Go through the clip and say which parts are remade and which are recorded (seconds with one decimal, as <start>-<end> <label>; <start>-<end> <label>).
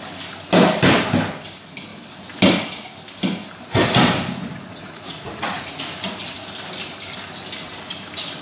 0.0-4.4 recorded; 4.4-5.8 remade; 5.8-8.4 recorded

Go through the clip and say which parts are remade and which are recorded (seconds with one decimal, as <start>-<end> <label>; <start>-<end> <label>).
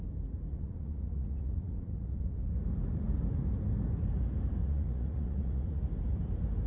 0.0-0.5 recorded; 0.5-2.4 remade; 2.4-4.6 recorded; 4.6-5.8 remade; 5.8-6.7 recorded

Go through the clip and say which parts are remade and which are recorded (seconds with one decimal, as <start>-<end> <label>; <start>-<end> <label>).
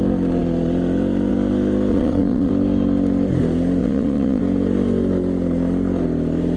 0.0-1.9 recorded; 1.9-2.5 remade; 2.5-3.8 recorded; 3.8-4.4 remade; 4.4-6.6 recorded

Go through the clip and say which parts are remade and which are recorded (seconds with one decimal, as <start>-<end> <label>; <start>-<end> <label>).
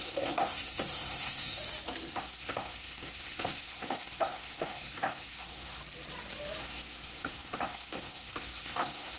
0.0-1.6 remade; 1.6-2.1 recorded; 2.1-5.8 remade; 5.8-6.6 recorded; 6.6-9.2 remade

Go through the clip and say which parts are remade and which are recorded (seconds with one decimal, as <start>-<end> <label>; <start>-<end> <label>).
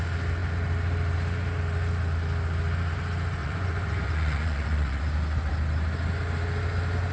0.0-3.4 recorded; 3.4-5.0 remade; 5.0-7.1 recorded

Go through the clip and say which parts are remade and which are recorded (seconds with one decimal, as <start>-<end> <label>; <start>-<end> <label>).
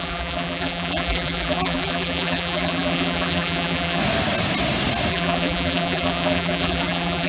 0.0-4.0 remade; 4.0-5.1 recorded; 5.1-7.3 remade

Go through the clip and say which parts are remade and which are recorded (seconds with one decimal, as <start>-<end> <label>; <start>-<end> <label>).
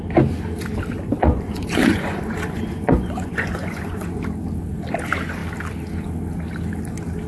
0.0-1.2 recorded; 1.2-4.2 remade; 4.2-7.3 recorded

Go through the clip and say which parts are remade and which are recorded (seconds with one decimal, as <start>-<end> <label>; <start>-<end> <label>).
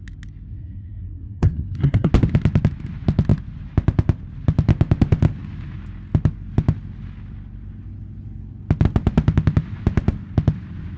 0.0-0.5 recorded; 0.5-2.1 remade; 2.1-11.0 recorded